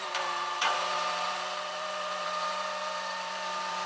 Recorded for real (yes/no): no